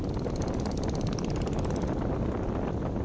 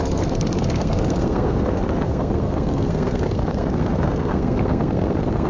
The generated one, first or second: second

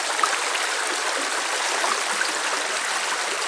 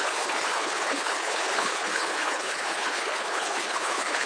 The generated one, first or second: second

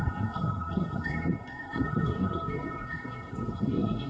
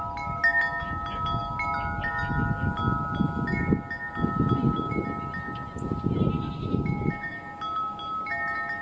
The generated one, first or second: first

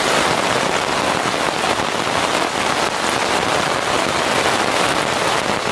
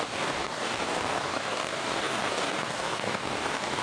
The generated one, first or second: second